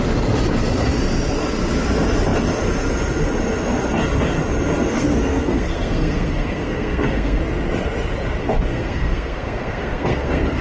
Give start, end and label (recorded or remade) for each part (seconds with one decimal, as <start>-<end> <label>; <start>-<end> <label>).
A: 0.0-4.9 recorded; 4.9-7.4 remade; 7.4-8.7 recorded; 8.7-10.6 remade